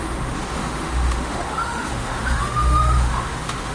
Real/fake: fake